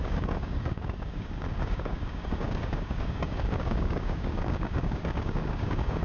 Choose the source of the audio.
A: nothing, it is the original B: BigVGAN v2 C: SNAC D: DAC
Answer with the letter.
D